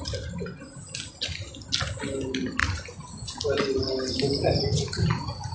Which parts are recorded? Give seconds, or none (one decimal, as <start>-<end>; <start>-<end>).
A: 0.0-5.5

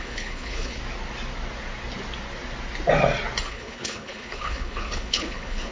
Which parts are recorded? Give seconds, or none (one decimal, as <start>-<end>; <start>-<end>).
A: 0.8-3.5